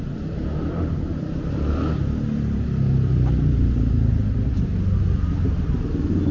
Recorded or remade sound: recorded